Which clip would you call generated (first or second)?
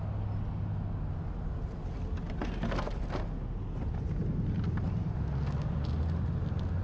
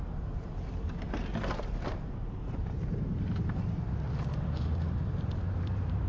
second